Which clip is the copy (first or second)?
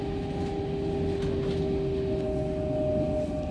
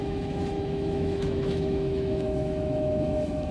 second